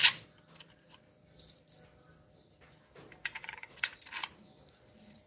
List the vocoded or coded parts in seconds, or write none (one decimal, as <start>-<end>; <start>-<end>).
3.2-3.9